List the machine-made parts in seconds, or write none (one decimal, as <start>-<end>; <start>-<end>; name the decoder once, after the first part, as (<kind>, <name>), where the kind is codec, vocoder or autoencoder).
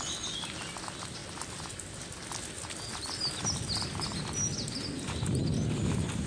none